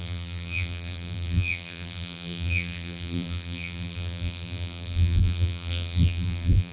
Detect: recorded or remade remade